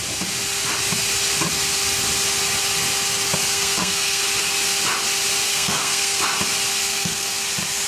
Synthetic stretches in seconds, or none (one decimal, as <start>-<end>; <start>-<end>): 3.4-4.2; 5.5-6.2; 6.7-7.4